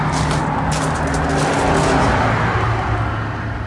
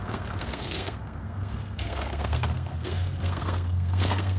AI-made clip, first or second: second